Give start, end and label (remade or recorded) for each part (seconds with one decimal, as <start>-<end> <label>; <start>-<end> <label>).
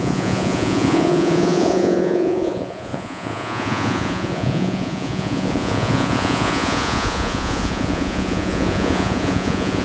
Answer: 0.0-9.8 remade